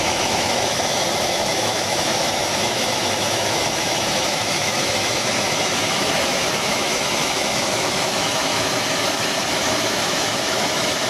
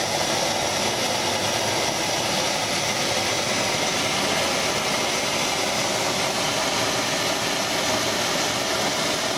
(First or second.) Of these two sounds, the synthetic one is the first